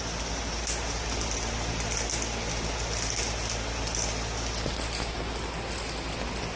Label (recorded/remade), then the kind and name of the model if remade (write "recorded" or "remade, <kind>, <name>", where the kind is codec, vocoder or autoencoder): recorded